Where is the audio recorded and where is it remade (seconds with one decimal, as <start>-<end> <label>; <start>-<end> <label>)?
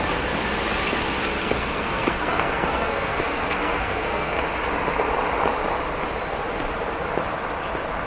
0.0-1.4 recorded; 1.4-4.4 remade; 4.4-8.1 recorded